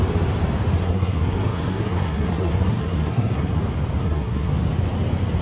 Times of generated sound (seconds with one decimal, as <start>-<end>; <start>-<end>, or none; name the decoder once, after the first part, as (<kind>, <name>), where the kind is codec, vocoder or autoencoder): 0.8-3.6 (codec, SNAC); 4.0-4.5